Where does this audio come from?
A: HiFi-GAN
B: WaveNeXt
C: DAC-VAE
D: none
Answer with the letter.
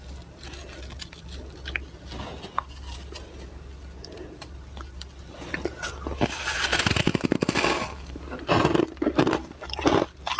D